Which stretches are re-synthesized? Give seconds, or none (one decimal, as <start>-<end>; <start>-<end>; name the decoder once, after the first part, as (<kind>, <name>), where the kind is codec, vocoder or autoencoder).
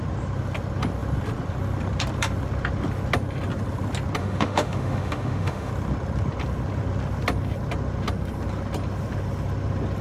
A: 4.2-5.7 (autoencoder, DAC-VAE)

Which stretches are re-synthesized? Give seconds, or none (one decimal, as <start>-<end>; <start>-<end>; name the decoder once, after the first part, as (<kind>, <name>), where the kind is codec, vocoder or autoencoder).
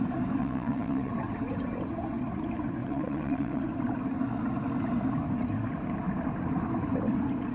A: 0.4-1.1 (vocoder, WaveNeXt); 2.8-3.6